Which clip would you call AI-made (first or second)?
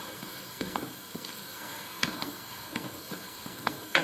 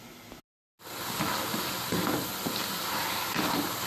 first